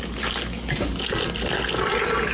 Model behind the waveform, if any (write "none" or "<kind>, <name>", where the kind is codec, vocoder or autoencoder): none